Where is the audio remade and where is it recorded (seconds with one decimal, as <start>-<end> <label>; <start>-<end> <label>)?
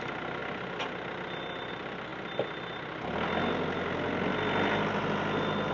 0.0-5.7 recorded